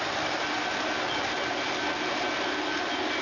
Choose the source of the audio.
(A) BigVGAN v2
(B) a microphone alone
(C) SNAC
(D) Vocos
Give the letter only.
B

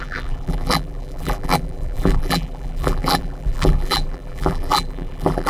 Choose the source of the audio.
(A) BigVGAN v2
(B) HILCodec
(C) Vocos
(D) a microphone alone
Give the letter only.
A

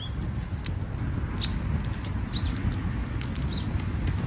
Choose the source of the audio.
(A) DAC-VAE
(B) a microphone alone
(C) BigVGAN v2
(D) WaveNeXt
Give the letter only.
B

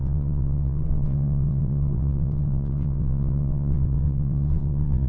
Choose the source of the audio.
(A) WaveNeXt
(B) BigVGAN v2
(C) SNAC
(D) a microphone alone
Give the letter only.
A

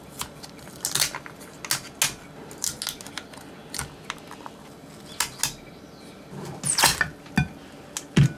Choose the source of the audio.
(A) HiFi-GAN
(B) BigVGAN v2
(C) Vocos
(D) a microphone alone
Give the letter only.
D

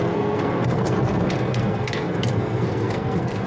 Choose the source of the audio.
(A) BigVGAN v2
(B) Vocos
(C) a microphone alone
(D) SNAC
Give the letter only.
D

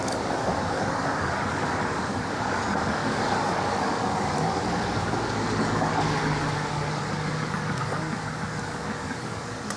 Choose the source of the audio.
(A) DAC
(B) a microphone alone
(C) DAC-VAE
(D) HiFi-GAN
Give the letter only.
A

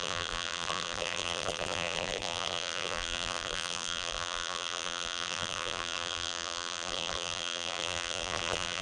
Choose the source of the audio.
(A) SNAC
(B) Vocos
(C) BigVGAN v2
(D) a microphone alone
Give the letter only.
C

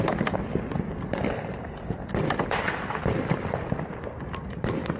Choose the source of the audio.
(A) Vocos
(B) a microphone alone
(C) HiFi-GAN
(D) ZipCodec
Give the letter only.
B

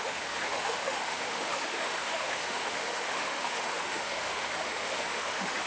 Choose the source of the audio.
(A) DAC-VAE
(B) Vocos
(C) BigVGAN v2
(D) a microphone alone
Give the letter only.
A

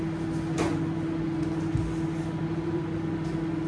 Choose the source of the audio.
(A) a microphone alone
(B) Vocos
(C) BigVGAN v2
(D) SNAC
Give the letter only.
A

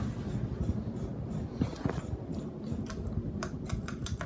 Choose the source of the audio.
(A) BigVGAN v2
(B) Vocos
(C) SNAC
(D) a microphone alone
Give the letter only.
D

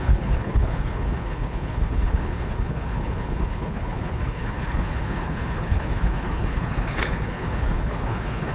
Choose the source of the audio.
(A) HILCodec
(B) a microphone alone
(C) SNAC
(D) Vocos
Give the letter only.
A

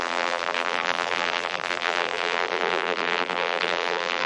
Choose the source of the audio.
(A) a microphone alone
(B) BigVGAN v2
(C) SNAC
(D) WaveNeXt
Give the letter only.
B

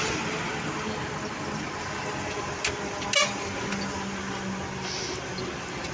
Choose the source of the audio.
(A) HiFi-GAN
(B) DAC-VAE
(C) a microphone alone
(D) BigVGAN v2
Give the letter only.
C